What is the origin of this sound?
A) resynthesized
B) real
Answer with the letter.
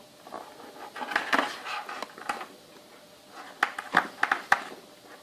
B